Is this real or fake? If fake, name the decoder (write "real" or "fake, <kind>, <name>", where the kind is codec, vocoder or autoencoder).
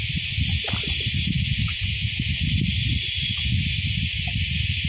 real